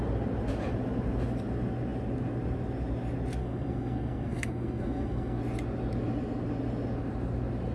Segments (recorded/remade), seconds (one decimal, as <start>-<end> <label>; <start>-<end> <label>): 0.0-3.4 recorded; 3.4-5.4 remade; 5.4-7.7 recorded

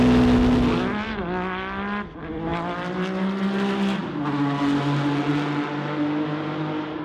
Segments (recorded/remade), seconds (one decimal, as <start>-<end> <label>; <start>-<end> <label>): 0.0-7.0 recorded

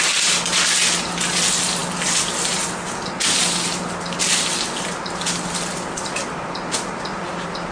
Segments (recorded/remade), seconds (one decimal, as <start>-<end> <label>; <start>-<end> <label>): 0.0-7.7 recorded